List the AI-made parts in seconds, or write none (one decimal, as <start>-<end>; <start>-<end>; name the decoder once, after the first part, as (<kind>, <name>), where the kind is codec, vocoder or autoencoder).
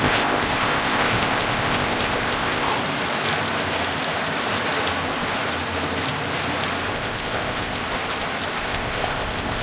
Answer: 0.0-2.7 (codec, ZipCodec); 6.9-7.8; 8.6-9.6